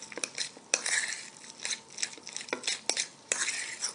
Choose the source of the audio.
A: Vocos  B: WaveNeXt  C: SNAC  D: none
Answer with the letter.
D